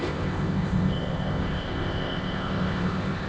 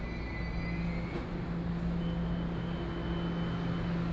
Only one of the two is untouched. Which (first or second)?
second